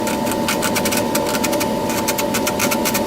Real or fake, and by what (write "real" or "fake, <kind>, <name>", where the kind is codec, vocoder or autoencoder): real